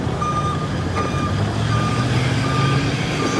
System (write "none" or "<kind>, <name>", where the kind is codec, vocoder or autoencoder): none